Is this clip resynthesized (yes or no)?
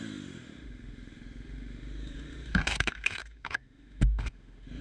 yes